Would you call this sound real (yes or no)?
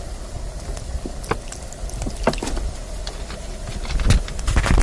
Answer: yes